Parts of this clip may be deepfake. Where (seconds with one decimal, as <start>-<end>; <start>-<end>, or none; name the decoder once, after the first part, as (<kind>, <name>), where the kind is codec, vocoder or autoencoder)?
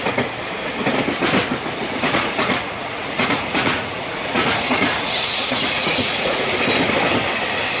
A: 1.8-6.5 (vocoder, Vocos)